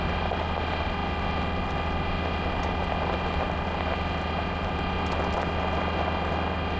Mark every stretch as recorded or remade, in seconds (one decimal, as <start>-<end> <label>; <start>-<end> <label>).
0.0-6.8 recorded